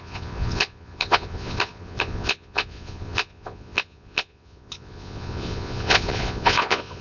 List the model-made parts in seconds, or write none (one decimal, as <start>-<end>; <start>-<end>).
0.0-7.0